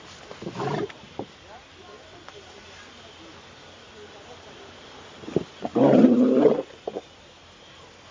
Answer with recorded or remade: recorded